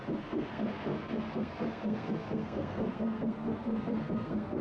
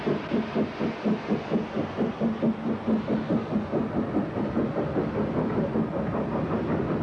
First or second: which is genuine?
second